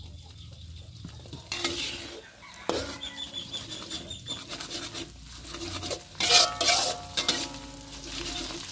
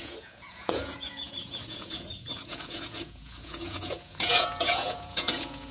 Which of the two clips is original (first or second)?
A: first